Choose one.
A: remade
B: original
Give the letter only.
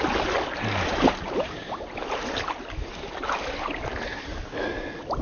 B